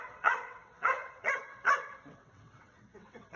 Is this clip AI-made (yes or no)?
yes